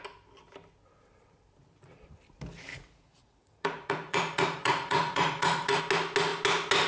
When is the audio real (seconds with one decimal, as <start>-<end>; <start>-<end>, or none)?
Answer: 0.0-2.7; 5.8-6.9